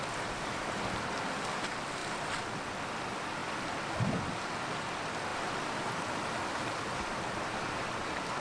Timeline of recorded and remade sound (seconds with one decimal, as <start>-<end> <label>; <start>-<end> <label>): 0.0-8.4 recorded